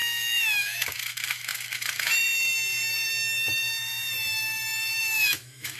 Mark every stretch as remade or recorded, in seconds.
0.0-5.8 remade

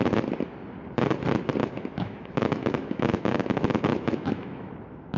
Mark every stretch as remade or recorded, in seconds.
0.0-1.6 recorded; 1.6-4.7 remade; 4.7-5.2 recorded

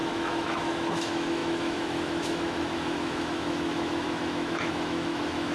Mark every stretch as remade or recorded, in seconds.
0.0-5.5 remade

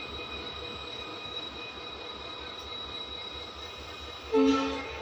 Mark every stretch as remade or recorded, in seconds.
0.0-1.1 recorded; 1.1-1.8 remade; 1.8-5.0 recorded

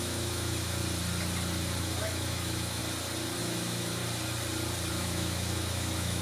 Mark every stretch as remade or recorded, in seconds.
0.0-0.8 remade; 0.8-1.8 recorded; 1.8-2.8 remade; 2.8-3.4 recorded; 3.4-4.0 remade; 4.0-4.9 recorded; 4.9-6.2 remade

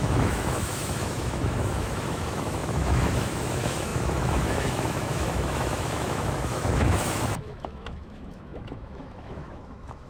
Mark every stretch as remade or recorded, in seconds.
0.0-10.1 remade

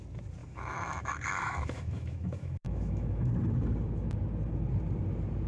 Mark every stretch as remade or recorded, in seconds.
0.0-0.4 recorded; 0.4-3.3 remade; 3.3-5.5 recorded

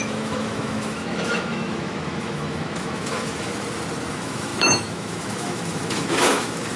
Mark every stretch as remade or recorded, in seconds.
0.0-3.5 remade; 3.5-4.1 recorded; 4.1-6.8 remade